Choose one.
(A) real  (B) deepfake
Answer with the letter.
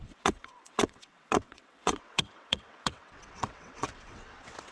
B